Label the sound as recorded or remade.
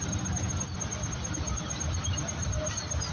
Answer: recorded